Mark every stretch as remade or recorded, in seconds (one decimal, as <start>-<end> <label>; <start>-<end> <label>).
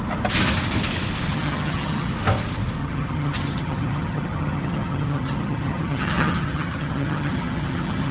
0.0-1.3 recorded; 1.3-2.1 remade; 2.1-2.8 recorded; 2.8-8.1 remade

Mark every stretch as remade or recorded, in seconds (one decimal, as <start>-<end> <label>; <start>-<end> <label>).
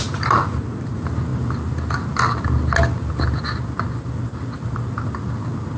0.0-5.8 recorded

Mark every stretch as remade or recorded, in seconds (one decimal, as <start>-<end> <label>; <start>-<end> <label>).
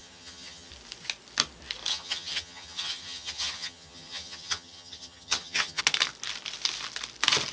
0.0-0.7 remade; 0.7-1.9 recorded; 1.9-5.8 remade; 5.8-7.5 recorded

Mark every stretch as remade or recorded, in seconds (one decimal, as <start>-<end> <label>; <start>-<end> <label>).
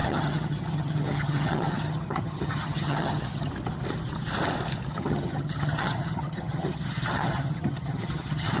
0.0-3.5 remade; 3.5-4.9 recorded; 4.9-8.6 remade